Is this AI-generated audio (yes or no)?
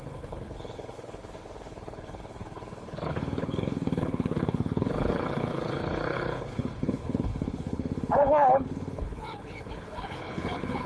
yes